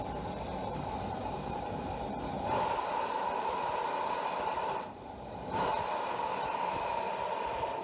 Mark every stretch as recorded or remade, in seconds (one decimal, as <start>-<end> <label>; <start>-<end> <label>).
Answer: 0.0-7.8 recorded